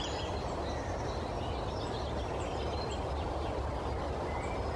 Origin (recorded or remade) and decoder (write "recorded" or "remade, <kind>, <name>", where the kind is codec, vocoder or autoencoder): recorded